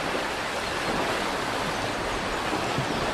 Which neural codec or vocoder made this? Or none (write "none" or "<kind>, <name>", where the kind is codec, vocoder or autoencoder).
none